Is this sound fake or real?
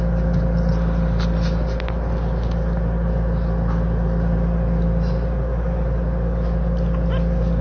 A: real